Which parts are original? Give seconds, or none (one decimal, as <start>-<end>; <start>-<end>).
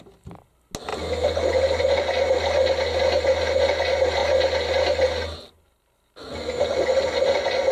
0.0-7.7